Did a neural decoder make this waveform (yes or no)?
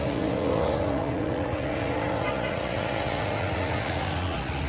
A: yes